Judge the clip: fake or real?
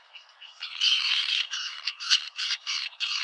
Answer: fake